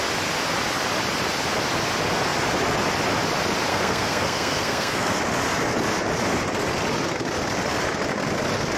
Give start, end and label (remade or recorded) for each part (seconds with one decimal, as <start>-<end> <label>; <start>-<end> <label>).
0.0-3.7 recorded; 3.7-5.2 remade; 5.2-8.8 recorded